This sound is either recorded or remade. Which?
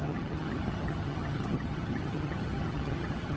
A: remade